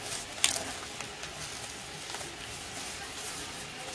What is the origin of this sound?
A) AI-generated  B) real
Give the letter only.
B